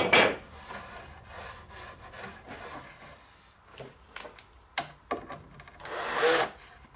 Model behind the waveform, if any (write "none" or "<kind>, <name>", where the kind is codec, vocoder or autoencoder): none